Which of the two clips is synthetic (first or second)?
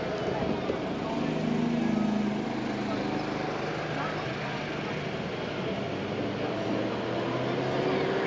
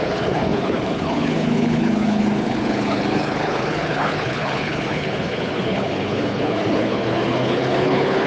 second